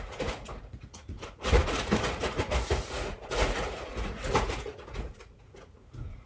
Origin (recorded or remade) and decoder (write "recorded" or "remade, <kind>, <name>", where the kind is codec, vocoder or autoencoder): remade, vocoder, Vocos